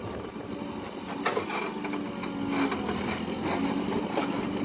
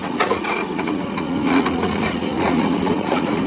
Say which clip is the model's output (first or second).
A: second